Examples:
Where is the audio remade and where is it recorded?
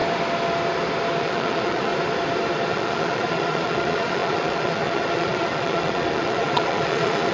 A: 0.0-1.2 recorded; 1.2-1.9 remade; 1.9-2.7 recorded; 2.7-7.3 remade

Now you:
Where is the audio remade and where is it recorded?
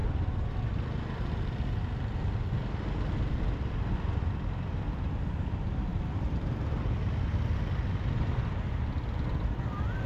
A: 0.0-10.1 recorded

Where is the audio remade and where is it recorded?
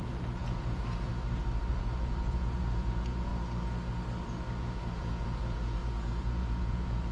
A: 0.0-1.1 remade; 1.1-1.7 recorded; 1.7-3.3 remade; 3.3-4.6 recorded; 4.6-7.1 remade